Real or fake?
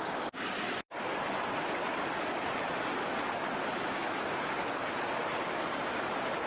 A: fake